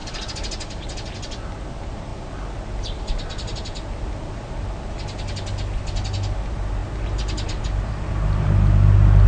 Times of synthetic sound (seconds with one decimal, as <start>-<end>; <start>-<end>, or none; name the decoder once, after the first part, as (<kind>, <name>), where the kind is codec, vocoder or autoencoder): 0.0-0.8 (vocoder, BigVGAN v2)